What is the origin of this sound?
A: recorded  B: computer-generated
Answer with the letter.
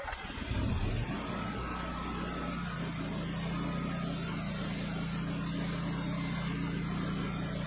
A